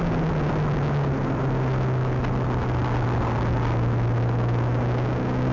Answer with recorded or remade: recorded